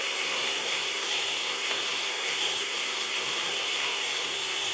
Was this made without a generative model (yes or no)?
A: no